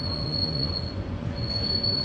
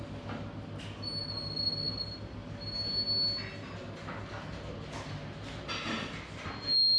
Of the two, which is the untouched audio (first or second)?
second